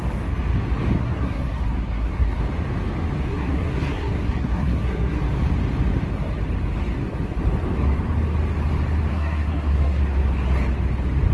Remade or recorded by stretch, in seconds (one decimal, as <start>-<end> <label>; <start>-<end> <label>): 0.0-1.0 recorded; 1.0-2.4 remade; 2.4-3.3 recorded; 3.3-5.2 remade; 5.2-9.1 recorded; 9.1-10.0 remade; 10.0-11.3 recorded